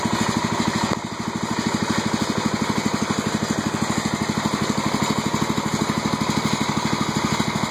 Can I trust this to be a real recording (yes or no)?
yes